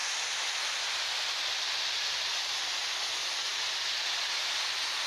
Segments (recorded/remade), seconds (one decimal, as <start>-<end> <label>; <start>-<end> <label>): 0.0-5.1 recorded